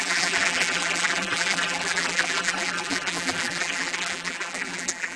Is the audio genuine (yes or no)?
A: no